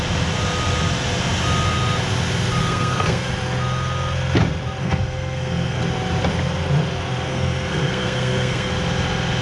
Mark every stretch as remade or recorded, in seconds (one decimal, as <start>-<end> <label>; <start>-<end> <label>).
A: 0.0-2.6 recorded; 2.6-3.3 remade; 3.3-4.8 recorded; 4.8-5.8 remade; 5.8-7.3 recorded; 7.3-8.7 remade; 8.7-9.4 recorded

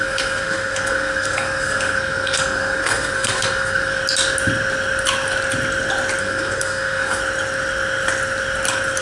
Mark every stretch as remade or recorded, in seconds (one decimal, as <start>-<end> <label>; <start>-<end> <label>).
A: 0.0-4.0 remade; 4.0-6.2 recorded; 6.2-7.2 remade; 7.2-9.0 recorded

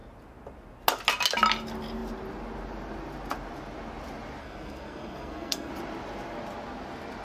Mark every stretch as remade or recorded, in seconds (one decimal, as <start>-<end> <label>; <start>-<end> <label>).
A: 0.0-4.4 recorded; 4.4-5.7 remade; 5.7-7.2 recorded

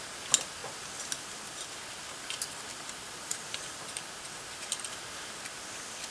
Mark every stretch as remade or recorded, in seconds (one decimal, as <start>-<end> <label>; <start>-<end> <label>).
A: 0.0-6.1 recorded

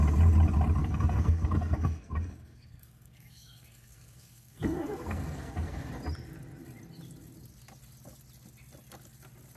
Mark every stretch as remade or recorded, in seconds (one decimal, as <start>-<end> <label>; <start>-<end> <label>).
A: 0.0-0.8 recorded; 0.8-5.9 remade; 5.9-9.6 recorded